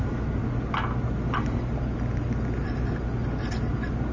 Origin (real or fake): real